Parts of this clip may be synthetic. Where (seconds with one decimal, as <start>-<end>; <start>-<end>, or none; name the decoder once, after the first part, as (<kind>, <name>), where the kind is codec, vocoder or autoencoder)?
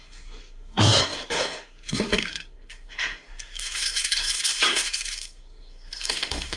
0.0-6.6 (codec, SNAC)